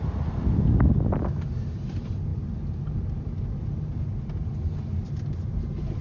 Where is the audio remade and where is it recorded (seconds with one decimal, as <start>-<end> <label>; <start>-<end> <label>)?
0.0-6.0 recorded